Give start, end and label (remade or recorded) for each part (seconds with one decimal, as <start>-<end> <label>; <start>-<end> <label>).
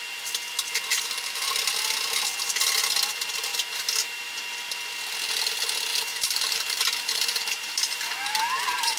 0.0-0.9 recorded; 0.9-1.5 remade; 1.5-5.9 recorded; 5.9-9.0 remade